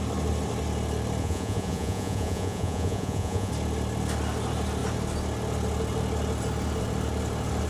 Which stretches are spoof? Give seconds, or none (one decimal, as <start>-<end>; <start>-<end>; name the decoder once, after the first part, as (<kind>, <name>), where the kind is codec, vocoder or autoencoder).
1.2-3.5 (vocoder, Vocos)